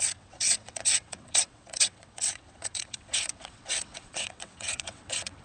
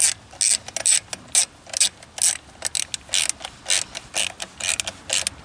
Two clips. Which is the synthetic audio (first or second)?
first